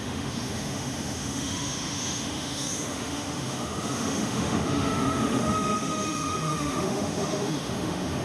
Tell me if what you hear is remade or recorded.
remade